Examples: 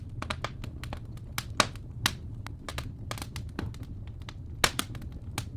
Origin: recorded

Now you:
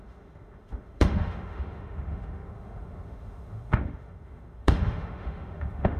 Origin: remade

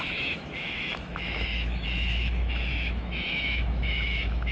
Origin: remade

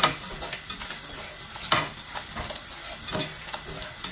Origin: recorded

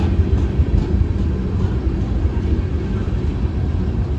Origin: recorded